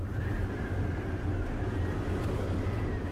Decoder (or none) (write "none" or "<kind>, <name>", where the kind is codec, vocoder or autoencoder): none